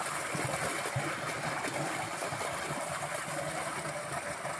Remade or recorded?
recorded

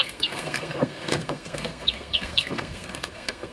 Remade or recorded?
remade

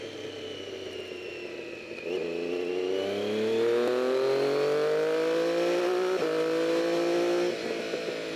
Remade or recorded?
recorded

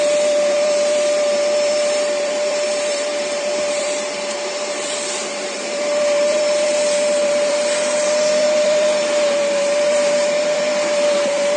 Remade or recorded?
remade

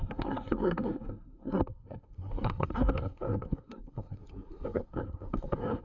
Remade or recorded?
remade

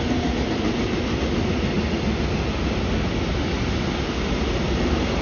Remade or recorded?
recorded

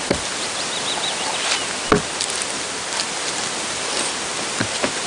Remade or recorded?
recorded